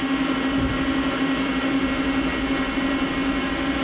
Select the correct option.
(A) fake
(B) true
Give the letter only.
B